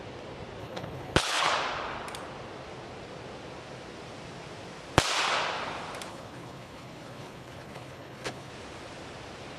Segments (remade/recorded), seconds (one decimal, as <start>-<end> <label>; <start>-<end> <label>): 0.0-0.6 recorded; 0.6-1.5 remade; 1.5-6.1 recorded; 6.1-8.5 remade; 8.5-9.6 recorded